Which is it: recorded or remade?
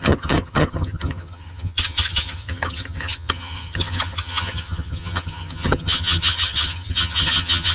remade